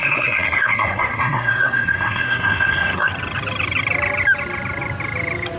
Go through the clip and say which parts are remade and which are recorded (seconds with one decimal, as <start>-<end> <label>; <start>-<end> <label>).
0.0-3.1 remade; 3.1-5.6 recorded

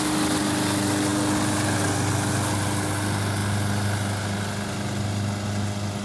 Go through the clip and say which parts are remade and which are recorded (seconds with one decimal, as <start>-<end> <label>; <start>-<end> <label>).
0.0-6.0 recorded